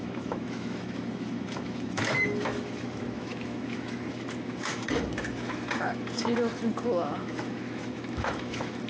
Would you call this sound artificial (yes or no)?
yes